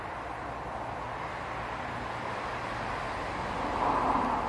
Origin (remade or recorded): recorded